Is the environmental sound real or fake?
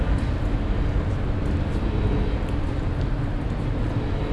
real